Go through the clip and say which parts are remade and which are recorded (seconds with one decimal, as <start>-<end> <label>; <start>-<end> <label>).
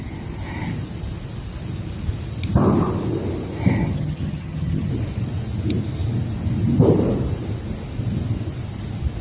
0.0-3.8 recorded; 3.8-4.9 remade; 4.9-9.2 recorded